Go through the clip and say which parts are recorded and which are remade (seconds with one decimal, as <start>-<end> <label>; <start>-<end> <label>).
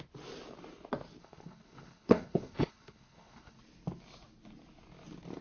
0.0-1.2 recorded; 1.2-3.6 remade; 3.6-5.4 recorded